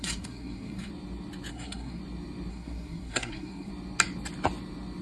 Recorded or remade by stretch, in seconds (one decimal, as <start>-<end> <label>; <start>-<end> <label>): 0.0-0.9 remade; 0.9-1.5 recorded; 1.5-2.0 remade; 2.0-2.5 recorded; 2.5-3.7 remade; 3.7-5.0 recorded